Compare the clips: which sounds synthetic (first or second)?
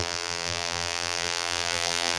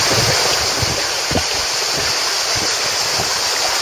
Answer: first